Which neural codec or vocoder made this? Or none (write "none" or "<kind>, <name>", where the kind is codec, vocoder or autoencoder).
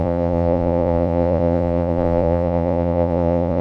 vocoder, Vocos